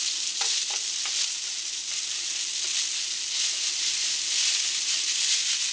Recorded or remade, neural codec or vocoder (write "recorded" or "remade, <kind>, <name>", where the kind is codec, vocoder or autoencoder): recorded